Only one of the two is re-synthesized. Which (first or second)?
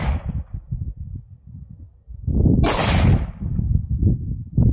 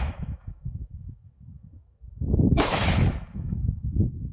second